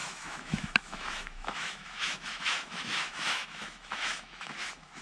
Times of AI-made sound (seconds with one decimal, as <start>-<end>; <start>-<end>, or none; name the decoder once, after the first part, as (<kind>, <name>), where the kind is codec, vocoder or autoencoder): 0.0-5.0 (autoencoder, DAC-VAE)

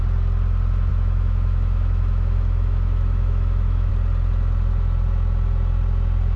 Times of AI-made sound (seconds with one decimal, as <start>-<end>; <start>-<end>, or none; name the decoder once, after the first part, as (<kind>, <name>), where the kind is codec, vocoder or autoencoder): 0.9-3.9 (autoencoder, DAC-VAE)

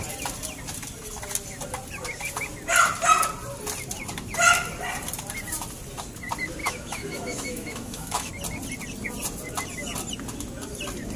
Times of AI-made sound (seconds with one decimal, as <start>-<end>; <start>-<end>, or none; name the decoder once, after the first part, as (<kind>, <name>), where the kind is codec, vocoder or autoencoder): 6.6-8.3 (autoencoder, DAC-VAE)

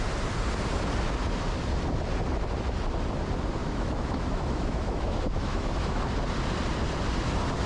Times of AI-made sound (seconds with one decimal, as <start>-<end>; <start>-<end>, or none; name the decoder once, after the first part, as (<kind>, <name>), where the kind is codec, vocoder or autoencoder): 3.6-6.0 (autoencoder, DAC-VAE)